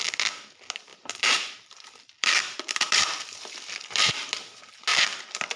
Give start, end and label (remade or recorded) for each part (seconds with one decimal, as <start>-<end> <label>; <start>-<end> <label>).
0.0-0.9 recorded; 0.9-4.3 remade; 4.3-4.9 recorded; 4.9-5.6 remade